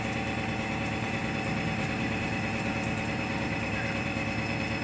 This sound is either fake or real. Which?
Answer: fake